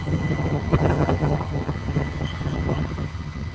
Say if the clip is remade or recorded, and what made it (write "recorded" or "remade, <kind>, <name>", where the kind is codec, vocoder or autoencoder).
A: remade, vocoder, HiFi-GAN